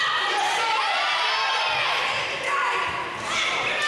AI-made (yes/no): no